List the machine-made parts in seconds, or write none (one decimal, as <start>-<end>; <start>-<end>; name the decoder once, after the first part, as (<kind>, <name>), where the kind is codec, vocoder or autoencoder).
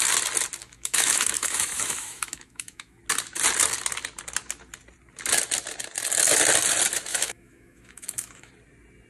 0.6-3.0 (autoencoder, DAC-VAE); 7.1-8.5